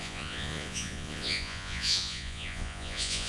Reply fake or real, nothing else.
fake